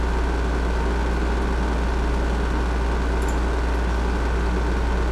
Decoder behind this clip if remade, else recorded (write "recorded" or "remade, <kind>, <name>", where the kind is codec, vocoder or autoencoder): recorded